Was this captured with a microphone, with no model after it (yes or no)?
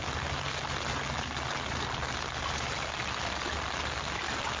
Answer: yes